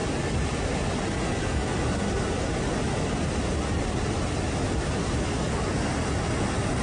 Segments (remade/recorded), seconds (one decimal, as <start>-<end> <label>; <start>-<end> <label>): 0.0-6.8 recorded